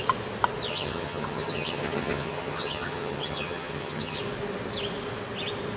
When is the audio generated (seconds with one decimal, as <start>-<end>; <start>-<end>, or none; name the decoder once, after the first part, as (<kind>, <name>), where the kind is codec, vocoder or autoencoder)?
0.7-4.2 (vocoder, HiFi-GAN)